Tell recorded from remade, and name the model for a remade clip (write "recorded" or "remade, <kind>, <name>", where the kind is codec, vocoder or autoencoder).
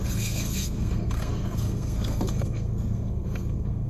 remade, codec, SNAC